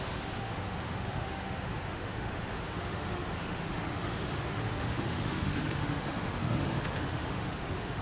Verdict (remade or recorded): remade